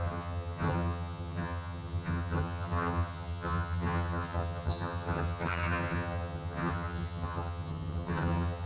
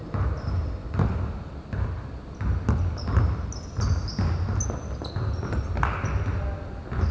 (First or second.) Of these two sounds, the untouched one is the second